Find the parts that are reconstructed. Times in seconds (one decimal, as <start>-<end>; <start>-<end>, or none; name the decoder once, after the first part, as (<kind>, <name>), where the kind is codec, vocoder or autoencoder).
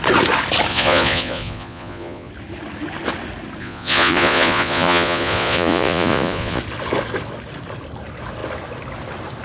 0.7-2.3 (vocoder, Vocos); 3.6-6.6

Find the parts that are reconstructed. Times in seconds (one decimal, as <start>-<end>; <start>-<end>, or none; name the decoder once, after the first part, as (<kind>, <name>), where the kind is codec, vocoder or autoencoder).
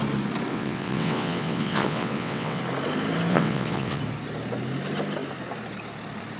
0.5-2.6 (vocoder, WaveNeXt); 3.3-4.0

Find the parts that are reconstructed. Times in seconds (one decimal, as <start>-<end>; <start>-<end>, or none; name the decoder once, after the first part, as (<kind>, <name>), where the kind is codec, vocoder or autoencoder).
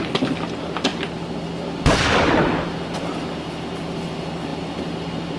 none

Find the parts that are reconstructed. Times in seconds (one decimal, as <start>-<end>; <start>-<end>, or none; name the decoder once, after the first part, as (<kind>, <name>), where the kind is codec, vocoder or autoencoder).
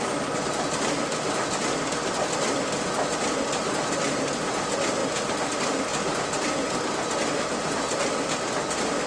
none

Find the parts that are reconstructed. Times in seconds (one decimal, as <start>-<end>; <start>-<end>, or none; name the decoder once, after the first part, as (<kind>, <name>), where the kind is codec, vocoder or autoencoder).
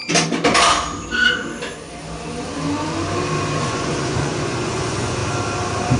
3.6-5.2 (vocoder, Vocos)